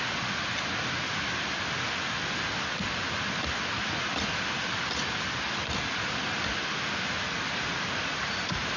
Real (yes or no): yes